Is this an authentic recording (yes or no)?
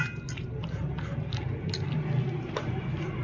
yes